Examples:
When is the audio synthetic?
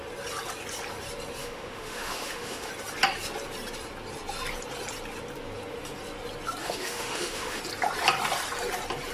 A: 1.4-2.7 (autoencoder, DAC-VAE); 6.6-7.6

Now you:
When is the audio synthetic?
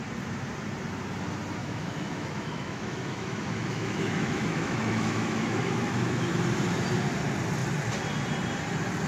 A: 1.6-6.4 (autoencoder, DAC-VAE)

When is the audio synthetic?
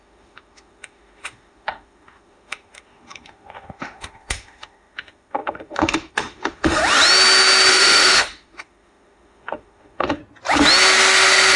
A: 0.0-6.8 (autoencoder, DAC-VAE); 7.7-10.2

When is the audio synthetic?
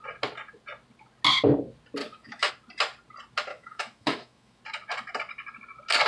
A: 2.0-2.5 (autoencoder, DAC-VAE); 3.5-4.6